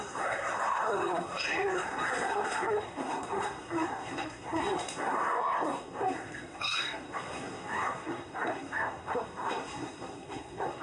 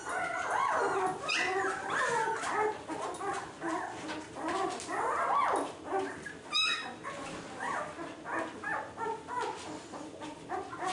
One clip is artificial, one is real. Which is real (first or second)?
second